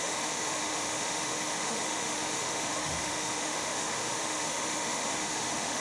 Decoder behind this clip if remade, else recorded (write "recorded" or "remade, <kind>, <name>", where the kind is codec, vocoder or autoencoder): remade, autoencoder, DAC-VAE